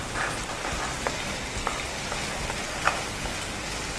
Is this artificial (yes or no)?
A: no